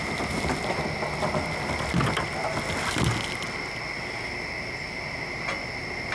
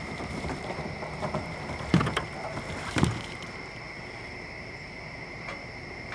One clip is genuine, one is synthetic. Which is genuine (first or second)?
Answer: first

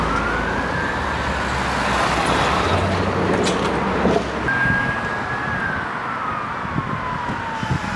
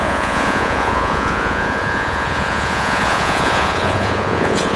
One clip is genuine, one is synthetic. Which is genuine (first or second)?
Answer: first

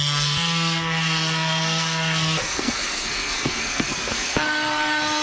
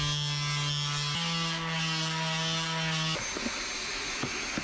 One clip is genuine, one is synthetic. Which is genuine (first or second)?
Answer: second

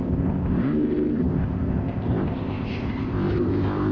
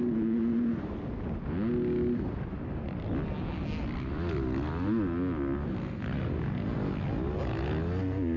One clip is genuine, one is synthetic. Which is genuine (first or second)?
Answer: second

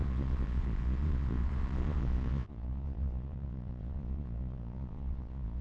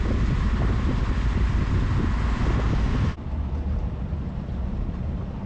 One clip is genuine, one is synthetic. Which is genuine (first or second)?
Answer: second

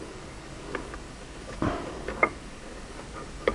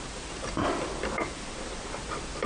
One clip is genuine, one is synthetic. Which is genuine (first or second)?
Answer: second